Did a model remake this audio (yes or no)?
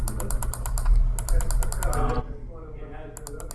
no